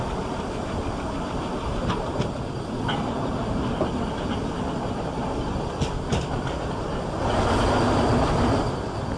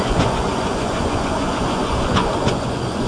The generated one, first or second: second